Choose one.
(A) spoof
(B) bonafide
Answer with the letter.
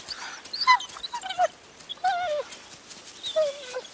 B